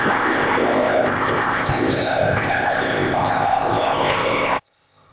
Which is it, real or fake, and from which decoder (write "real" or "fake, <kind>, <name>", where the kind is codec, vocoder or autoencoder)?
fake, codec, ZipCodec